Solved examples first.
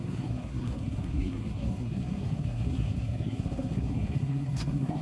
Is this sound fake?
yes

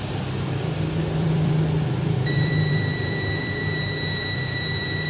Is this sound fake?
yes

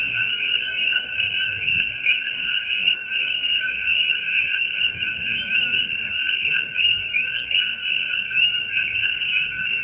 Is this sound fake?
yes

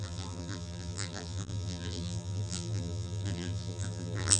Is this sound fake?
yes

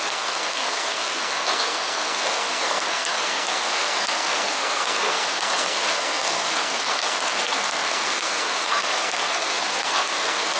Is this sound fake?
yes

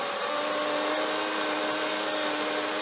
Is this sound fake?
no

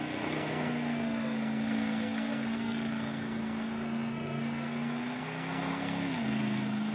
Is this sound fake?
yes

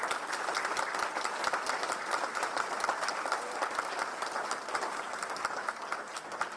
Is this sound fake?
no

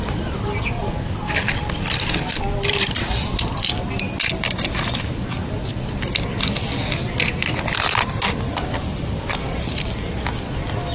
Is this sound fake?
no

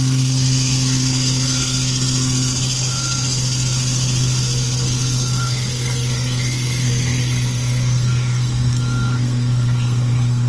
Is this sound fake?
yes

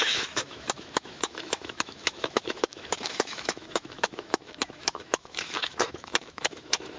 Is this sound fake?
yes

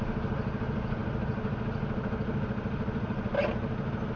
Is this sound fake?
no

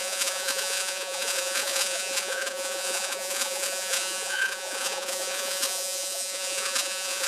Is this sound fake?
yes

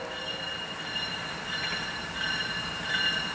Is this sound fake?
no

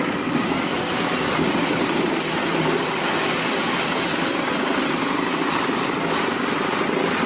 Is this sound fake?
yes